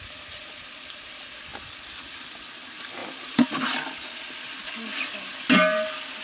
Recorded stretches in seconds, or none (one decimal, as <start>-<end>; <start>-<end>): 0.0-6.2